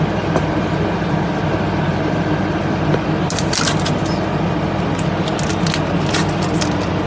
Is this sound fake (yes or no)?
no